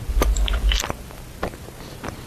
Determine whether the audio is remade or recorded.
recorded